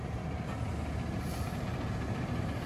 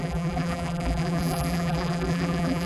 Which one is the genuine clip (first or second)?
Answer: first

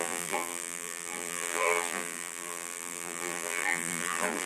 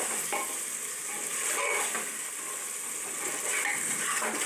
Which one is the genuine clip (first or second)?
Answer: second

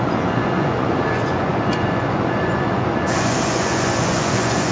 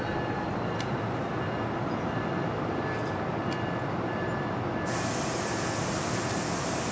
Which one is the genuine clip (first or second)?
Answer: second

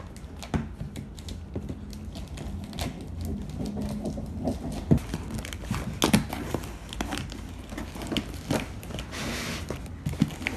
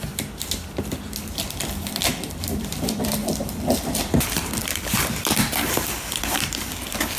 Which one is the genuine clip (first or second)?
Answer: first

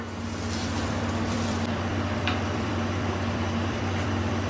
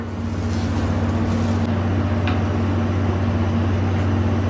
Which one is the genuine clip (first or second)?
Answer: second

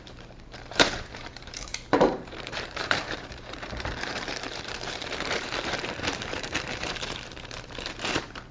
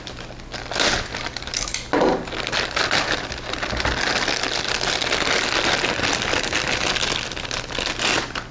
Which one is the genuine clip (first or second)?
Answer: second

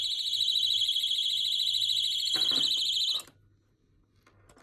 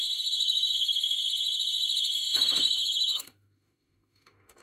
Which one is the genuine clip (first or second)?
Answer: first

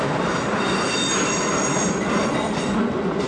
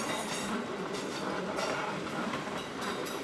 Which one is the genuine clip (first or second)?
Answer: first